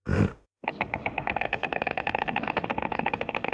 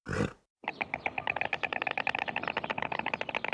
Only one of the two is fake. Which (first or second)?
first